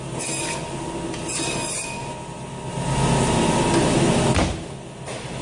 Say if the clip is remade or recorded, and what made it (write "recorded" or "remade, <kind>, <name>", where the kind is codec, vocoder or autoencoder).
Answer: recorded